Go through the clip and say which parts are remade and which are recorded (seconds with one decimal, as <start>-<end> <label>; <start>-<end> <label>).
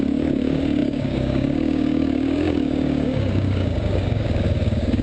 0.0-5.0 remade